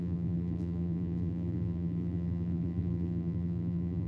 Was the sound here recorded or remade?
remade